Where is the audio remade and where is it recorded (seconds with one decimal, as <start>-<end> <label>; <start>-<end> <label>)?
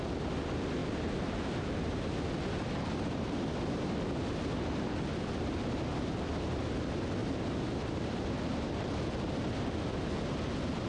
0.0-0.8 recorded; 0.8-2.2 remade; 2.2-7.2 recorded; 7.2-8.9 remade; 8.9-10.9 recorded